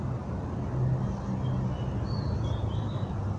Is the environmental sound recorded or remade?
recorded